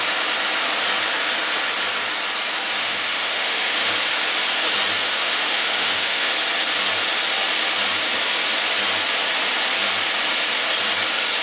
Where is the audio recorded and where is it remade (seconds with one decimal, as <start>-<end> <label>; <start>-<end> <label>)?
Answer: 0.0-2.8 recorded; 2.8-3.9 remade; 3.9-5.0 recorded; 5.0-6.3 remade; 6.3-11.4 recorded

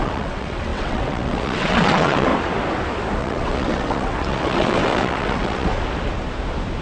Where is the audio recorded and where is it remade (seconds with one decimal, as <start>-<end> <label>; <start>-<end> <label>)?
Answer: 0.0-2.3 remade; 2.3-3.2 recorded; 3.2-5.7 remade; 5.7-6.8 recorded

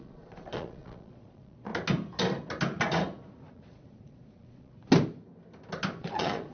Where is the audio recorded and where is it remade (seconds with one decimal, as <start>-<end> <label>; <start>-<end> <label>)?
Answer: 0.0-1.7 remade; 1.7-3.5 recorded; 3.5-4.8 remade; 4.8-6.0 recorded; 6.0-6.5 remade

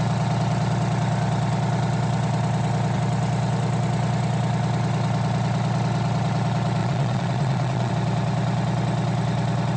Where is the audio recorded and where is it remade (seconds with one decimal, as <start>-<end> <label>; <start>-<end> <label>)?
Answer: 0.0-6.8 recorded; 6.8-7.9 remade; 7.9-9.8 recorded

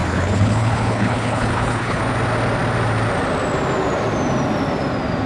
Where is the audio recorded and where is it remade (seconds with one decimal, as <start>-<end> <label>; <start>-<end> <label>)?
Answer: 0.0-2.0 remade; 2.0-5.3 recorded

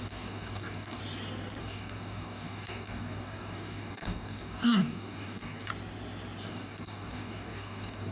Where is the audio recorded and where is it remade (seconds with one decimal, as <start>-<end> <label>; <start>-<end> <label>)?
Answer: 0.0-1.0 remade; 1.0-1.6 recorded; 1.6-5.7 remade; 5.7-6.4 recorded; 6.4-8.1 remade

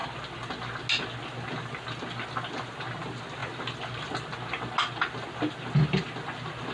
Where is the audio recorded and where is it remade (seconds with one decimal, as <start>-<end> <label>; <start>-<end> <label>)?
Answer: 0.0-6.7 recorded